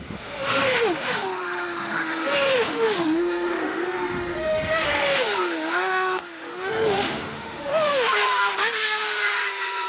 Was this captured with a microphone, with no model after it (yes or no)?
no